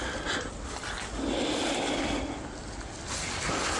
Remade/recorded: recorded